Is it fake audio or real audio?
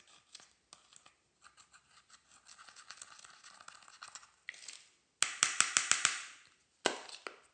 real